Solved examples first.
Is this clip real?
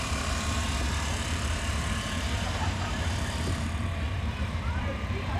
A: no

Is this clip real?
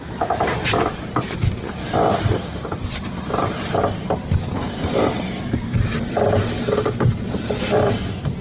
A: no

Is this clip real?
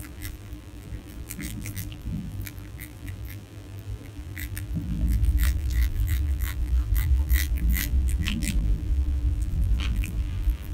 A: no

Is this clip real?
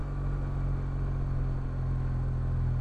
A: yes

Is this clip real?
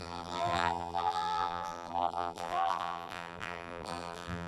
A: no